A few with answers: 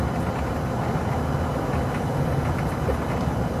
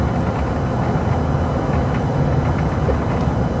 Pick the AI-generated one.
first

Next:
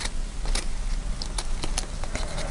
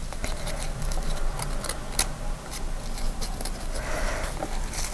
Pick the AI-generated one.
first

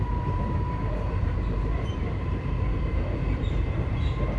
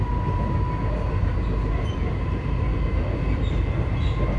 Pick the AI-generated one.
first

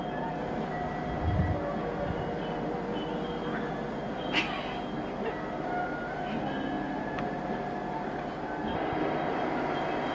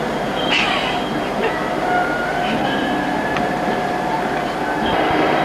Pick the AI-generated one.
second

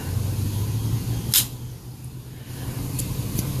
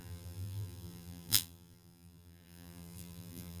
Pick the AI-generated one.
second